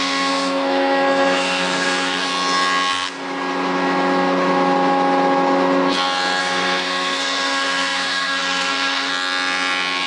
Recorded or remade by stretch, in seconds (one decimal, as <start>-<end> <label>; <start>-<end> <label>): 0.0-2.3 remade; 2.3-6.4 recorded; 6.4-9.1 remade; 9.1-10.1 recorded